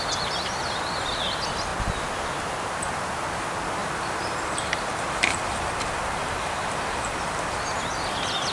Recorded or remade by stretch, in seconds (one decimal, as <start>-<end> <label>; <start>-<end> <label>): 0.0-3.8 recorded; 3.8-7.5 remade; 7.5-8.5 recorded